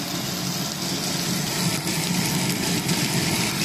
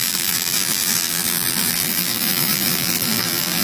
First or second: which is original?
first